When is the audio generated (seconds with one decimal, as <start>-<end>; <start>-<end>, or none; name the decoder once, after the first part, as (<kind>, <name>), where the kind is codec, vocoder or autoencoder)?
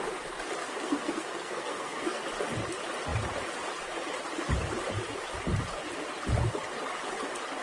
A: 0.6-2.2 (codec, SNAC)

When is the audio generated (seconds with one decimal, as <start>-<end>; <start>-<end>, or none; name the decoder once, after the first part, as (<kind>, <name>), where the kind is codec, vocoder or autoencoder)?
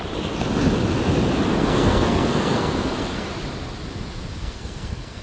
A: 1.5-3.3 (codec, SNAC); 4.4-5.2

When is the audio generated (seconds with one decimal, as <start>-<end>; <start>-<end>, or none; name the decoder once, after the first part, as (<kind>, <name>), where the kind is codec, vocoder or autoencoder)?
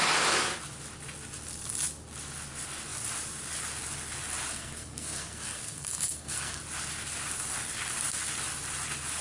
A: 4.5-6.6 (codec, SNAC)